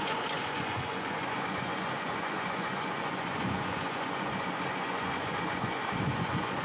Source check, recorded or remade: remade